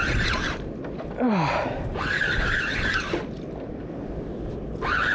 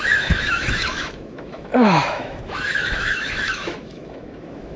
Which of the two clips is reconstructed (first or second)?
second